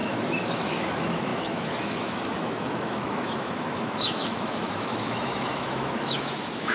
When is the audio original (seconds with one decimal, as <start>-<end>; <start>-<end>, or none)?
none